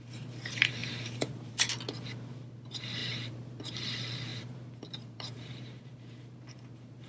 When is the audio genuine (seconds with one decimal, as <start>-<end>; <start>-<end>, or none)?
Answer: 0.0-0.8; 1.5-3.0; 3.6-4.3